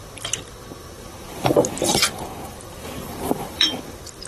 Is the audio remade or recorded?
remade